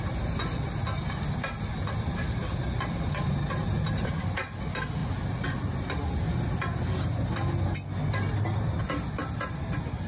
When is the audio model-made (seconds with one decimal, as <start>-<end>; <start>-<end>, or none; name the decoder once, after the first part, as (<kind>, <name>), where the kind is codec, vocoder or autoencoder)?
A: none